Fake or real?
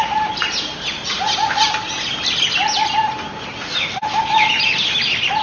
real